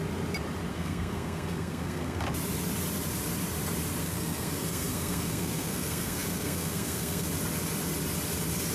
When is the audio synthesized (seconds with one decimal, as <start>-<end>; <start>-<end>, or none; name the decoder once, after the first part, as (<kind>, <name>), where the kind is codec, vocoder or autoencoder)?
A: 0.7-2.2 (codec, SNAC); 4.0-7.3